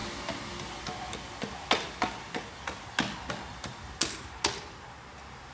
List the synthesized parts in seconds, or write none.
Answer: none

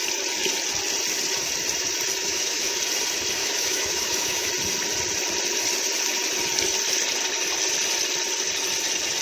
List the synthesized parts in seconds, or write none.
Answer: 2.2-2.8 (autoencoder, DAC-VAE); 3.4-4.5

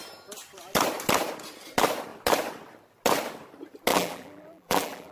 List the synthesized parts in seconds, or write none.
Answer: 3.9-5.1 (vocoder, BigVGAN v2)

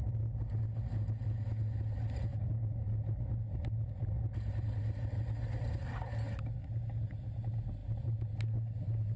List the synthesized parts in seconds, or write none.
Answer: none

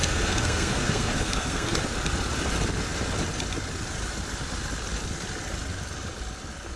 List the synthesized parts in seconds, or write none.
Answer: 0.0-1.8 (codec, SNAC)